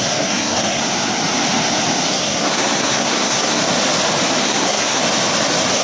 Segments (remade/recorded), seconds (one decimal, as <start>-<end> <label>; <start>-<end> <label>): 0.0-0.8 remade; 0.8-2.1 recorded; 2.1-3.6 remade; 3.6-4.4 recorded; 4.4-5.0 remade; 5.0-5.8 recorded